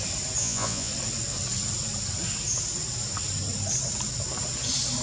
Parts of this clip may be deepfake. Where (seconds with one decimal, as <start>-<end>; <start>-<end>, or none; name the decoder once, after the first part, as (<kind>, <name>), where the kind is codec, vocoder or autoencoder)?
0.4-0.9 (vocoder, Vocos)